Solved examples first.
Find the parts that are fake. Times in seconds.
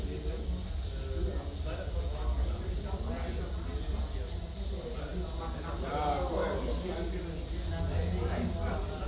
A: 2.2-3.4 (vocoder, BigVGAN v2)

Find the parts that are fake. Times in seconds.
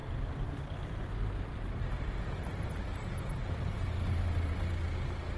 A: 1.5-4.7 (vocoder, BigVGAN v2)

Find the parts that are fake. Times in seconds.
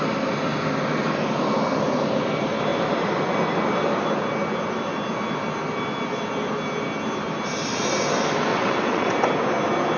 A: 8.5-9.1 (vocoder, WaveNeXt)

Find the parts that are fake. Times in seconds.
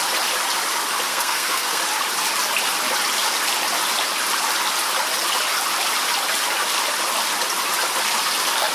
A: 1.1-1.8 (codec, SNAC)